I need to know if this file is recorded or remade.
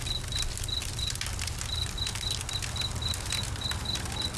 recorded